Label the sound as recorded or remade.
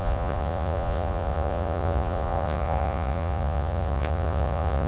remade